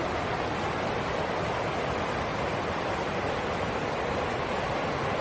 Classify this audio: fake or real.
real